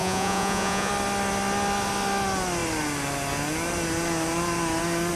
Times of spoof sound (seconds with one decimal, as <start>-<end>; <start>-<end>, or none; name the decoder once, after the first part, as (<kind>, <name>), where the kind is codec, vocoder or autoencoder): 0.0-0.9 (vocoder, Vocos)

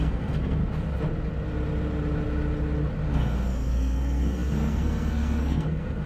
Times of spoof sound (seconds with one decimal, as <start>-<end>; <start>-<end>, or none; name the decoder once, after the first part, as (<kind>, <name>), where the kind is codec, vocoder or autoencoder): 0.0-0.6 (codec, SNAC); 3.1-6.1

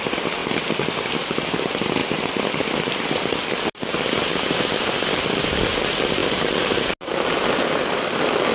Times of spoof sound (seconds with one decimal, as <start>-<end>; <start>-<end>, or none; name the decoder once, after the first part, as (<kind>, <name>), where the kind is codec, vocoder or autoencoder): none

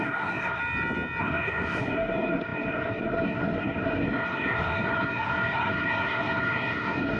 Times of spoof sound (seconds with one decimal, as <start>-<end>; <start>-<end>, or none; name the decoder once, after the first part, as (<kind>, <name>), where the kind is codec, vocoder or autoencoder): 0.0-0.6 (codec, SNAC); 1.2-7.2

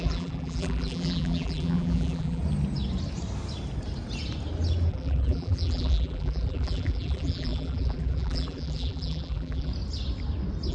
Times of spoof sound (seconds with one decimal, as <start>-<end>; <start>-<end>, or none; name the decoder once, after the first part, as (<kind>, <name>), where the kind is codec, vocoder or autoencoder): 0.0-2.4 (vocoder, BigVGAN v2); 4.9-9.7

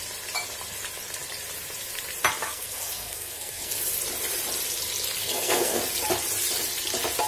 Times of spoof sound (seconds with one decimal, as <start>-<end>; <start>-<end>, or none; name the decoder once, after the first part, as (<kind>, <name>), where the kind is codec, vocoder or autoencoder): 2.4-3.8 (codec, SNAC); 5.2-5.8

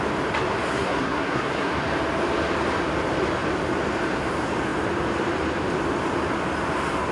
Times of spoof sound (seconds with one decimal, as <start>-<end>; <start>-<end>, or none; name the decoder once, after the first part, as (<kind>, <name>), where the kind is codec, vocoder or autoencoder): 0.7-1.7 (codec, SNAC)

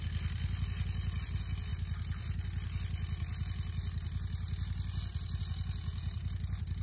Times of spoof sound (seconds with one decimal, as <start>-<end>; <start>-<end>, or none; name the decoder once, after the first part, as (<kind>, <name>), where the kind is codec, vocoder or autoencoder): none